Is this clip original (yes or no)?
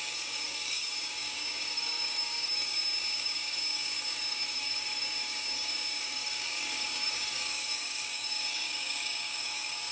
no